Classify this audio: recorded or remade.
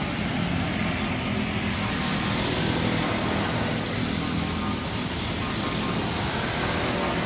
recorded